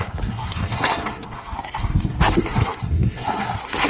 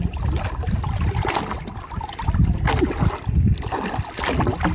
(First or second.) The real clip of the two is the second